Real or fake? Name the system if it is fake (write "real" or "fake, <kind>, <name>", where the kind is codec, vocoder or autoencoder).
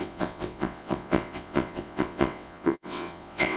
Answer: fake, vocoder, WaveNeXt